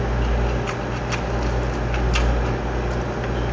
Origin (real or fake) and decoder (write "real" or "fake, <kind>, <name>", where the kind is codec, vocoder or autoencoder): real